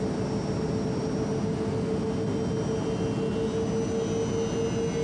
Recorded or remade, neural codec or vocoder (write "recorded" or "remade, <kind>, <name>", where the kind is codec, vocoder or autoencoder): recorded